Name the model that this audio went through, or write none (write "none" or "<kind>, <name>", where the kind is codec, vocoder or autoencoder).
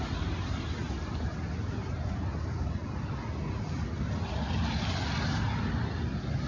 none